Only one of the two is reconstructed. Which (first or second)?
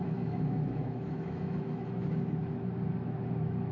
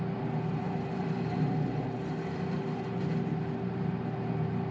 first